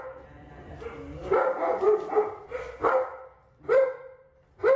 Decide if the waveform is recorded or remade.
remade